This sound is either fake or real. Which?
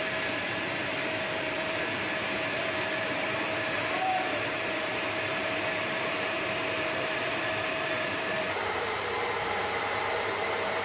fake